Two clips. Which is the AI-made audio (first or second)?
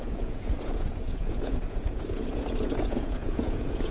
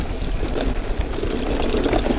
first